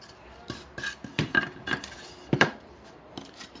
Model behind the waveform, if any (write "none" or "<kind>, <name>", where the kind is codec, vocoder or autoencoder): vocoder, BigVGAN v2